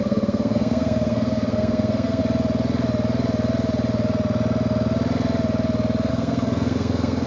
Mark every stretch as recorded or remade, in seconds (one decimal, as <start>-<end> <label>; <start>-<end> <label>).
0.0-2.2 remade; 2.2-6.1 recorded; 6.1-7.3 remade

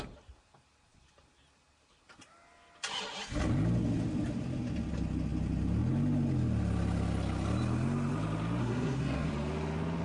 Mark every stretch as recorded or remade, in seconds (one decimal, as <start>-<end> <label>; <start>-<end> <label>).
0.0-8.6 recorded; 8.6-9.3 remade; 9.3-10.0 recorded

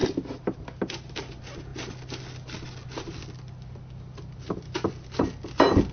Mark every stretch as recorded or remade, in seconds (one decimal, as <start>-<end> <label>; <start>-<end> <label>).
0.0-5.9 recorded

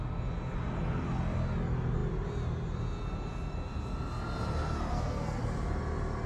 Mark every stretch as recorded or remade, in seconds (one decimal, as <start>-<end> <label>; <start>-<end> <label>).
0.0-4.9 recorded; 4.9-5.4 remade; 5.4-6.3 recorded

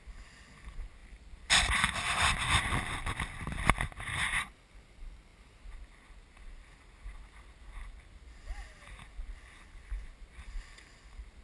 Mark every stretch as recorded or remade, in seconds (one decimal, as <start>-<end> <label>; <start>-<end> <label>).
0.0-1.0 recorded; 1.0-3.9 remade; 3.9-11.4 recorded

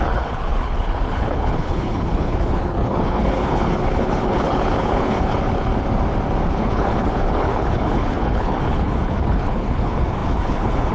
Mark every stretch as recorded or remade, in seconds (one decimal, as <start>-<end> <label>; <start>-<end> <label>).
0.0-5.7 remade; 5.7-6.5 recorded; 6.5-10.9 remade